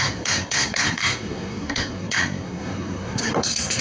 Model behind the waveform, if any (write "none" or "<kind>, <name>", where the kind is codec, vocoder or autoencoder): codec, SNAC